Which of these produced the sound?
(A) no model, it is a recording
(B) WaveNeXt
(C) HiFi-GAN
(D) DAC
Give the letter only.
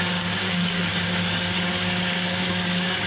D